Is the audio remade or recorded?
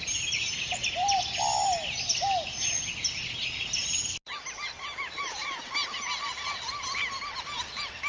recorded